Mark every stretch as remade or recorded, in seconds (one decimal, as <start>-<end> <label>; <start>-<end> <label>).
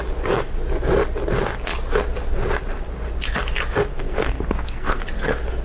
0.0-3.9 recorded; 3.9-5.0 remade; 5.0-5.6 recorded